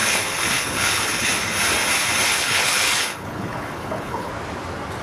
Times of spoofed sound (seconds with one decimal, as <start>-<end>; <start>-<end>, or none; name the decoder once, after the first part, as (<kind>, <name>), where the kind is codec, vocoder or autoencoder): 0.0-1.3 (codec, HILCodec); 2.3-4.3